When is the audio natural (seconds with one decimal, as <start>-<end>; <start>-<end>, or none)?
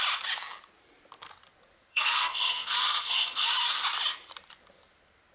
0.0-1.9; 3.5-5.3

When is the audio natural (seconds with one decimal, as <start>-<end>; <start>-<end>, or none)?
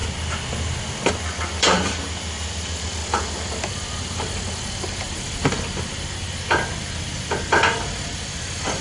0.0-1.6; 3.0-3.7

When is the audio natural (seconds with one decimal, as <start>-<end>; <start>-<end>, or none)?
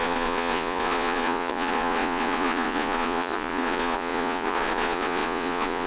none